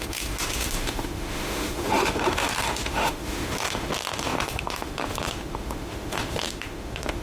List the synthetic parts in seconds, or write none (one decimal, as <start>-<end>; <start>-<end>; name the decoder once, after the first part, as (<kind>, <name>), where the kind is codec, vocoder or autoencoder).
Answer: 0.0-7.2 (autoencoder, DAC-VAE)